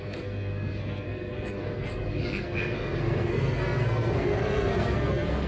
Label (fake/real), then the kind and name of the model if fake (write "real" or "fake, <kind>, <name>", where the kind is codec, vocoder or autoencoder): fake, codec, SNAC